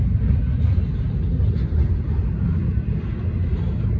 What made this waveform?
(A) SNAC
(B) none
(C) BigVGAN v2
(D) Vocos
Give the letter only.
B